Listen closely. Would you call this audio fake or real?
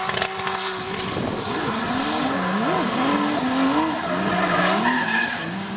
real